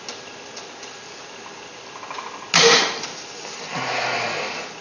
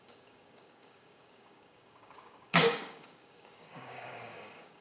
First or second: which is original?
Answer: first